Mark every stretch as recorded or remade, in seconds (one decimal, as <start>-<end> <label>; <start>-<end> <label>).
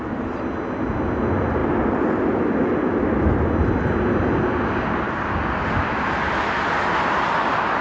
0.0-7.8 recorded